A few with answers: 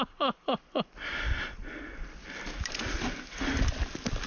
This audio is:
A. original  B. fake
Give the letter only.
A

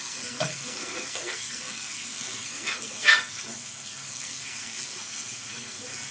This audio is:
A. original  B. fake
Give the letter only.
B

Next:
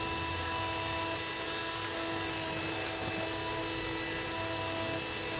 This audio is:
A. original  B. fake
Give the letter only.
A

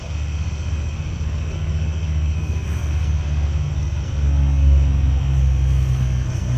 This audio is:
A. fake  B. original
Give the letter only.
A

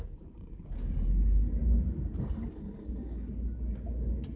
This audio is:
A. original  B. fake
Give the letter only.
A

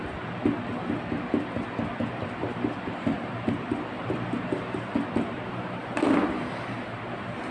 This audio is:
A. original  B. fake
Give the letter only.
A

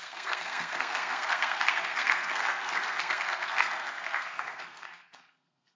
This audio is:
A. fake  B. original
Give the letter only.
A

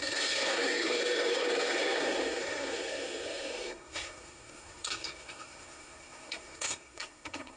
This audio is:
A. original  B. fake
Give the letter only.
B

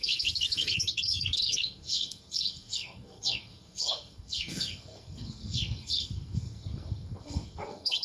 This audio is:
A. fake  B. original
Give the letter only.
A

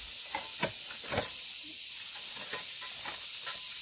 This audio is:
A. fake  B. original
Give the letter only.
B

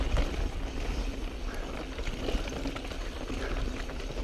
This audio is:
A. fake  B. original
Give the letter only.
B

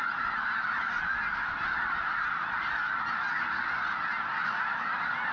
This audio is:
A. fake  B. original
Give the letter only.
B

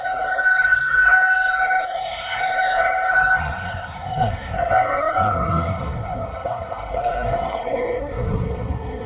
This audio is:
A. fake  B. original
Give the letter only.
A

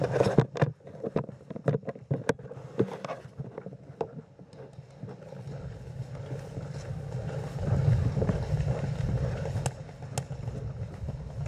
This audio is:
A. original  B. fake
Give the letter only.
A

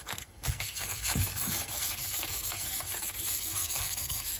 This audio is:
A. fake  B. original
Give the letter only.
A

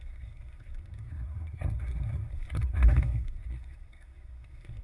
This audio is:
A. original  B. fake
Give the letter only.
B